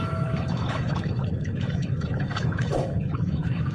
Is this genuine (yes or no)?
no